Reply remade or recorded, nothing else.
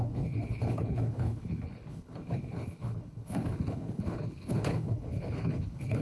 remade